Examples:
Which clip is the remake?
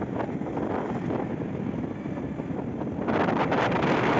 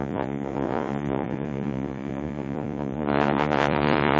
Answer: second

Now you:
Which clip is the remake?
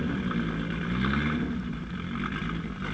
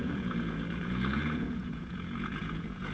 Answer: second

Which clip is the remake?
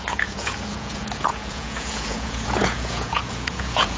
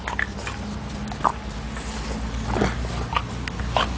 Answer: first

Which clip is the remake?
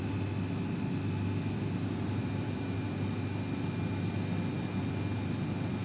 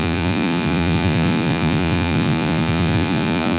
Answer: second